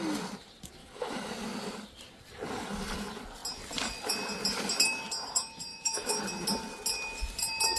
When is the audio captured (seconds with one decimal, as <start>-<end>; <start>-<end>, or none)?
0.0-0.8; 1.3-5.7; 6.2-7.8